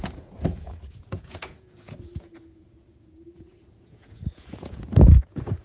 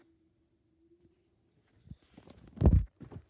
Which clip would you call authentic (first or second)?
second